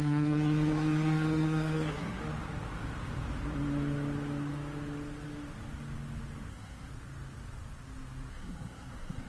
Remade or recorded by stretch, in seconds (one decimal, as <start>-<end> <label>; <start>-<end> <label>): 0.0-2.2 remade; 2.2-6.5 recorded; 6.5-6.9 remade; 6.9-8.3 recorded; 8.3-9.3 remade